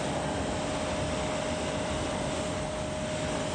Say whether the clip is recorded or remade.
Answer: recorded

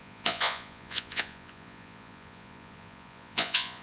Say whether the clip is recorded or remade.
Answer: remade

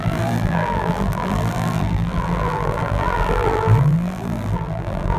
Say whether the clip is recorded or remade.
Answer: remade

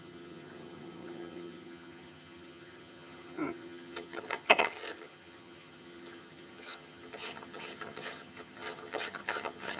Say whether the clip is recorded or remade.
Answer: remade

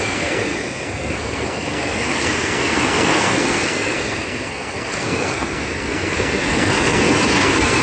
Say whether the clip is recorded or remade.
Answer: remade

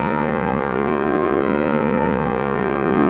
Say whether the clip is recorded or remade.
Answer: remade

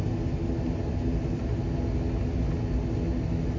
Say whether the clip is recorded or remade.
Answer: recorded